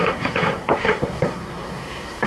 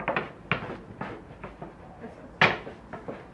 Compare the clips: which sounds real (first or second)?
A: second